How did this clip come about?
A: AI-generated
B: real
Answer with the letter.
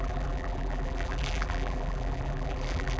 A